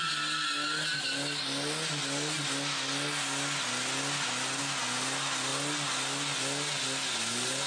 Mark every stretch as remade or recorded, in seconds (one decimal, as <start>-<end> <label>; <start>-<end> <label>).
0.0-7.7 recorded